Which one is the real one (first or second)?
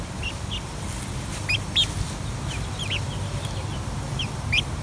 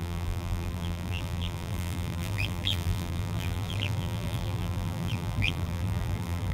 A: first